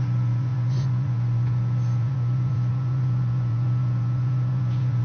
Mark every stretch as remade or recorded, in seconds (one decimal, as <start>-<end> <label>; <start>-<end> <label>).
0.0-5.0 remade